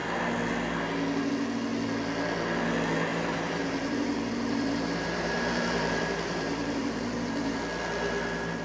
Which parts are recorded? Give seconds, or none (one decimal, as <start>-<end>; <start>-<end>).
0.0-3.1; 7.6-8.6